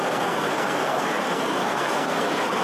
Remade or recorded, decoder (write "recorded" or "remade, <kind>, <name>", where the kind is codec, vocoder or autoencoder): remade, codec, SNAC